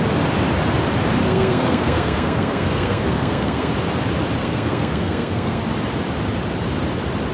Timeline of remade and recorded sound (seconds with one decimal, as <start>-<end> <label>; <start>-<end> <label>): 0.0-1.2 recorded; 1.2-3.7 remade; 3.7-4.4 recorded; 4.4-5.6 remade; 5.6-7.3 recorded